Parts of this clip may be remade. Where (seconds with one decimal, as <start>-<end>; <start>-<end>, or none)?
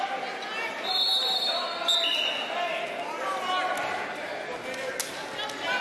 none